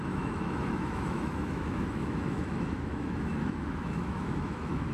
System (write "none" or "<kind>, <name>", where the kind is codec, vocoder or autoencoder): autoencoder, DAC-VAE